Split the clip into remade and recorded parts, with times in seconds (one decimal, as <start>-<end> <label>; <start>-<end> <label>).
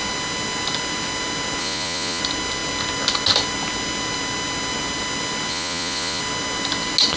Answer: 0.0-1.6 recorded; 1.6-2.2 remade; 2.2-5.5 recorded; 5.5-6.2 remade; 6.2-7.2 recorded